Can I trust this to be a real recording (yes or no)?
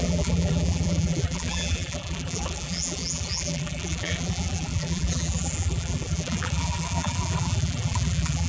no